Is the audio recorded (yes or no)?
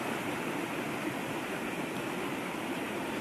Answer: no